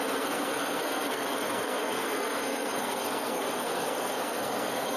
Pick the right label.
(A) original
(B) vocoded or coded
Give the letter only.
B